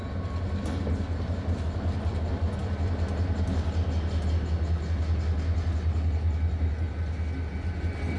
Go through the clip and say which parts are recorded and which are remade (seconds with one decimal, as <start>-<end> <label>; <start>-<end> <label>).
0.0-8.2 recorded